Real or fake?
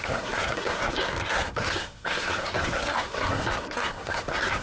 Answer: fake